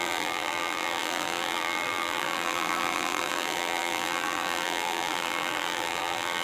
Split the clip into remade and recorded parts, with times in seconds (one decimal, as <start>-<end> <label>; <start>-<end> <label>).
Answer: 0.0-6.4 remade